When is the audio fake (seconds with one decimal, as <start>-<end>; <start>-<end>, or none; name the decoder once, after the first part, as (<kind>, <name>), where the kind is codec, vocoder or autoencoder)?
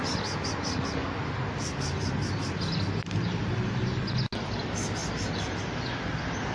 none